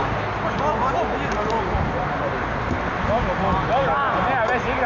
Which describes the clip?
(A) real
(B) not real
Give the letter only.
A